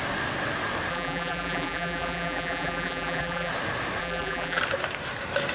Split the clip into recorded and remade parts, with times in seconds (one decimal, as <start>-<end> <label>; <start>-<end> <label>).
0.0-0.9 recorded; 0.9-3.5 remade; 3.5-4.0 recorded; 4.0-4.6 remade; 4.6-5.5 recorded